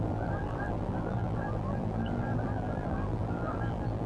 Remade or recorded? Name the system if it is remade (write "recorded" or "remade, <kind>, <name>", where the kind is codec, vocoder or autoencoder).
remade, vocoder, BigVGAN v2